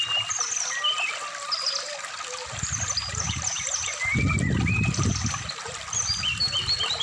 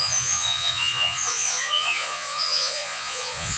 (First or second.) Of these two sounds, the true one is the first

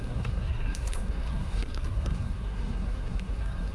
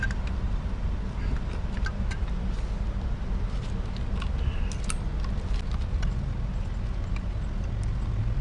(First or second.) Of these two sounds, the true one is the second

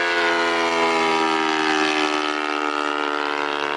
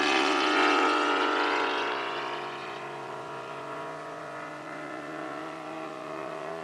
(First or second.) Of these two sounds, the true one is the first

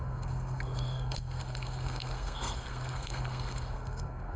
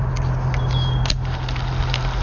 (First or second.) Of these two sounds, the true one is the second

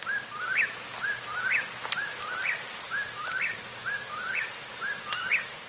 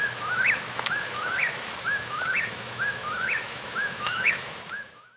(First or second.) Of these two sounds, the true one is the first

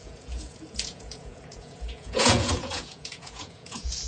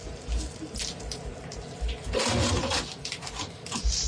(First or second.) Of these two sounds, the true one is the second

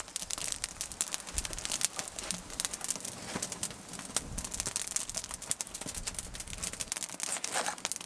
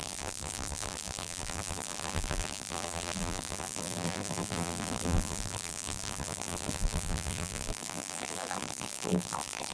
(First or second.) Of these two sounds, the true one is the first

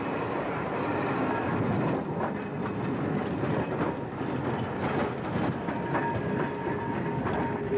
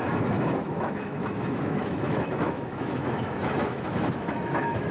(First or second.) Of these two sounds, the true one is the first